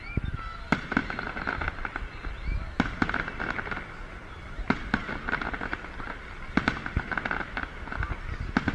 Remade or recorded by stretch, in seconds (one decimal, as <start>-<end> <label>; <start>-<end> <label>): 0.0-8.7 recorded